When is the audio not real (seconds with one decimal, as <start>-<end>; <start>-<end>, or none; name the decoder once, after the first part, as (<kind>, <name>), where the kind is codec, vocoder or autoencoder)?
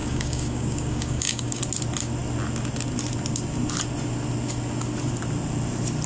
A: 0.0-1.6 (codec, DAC)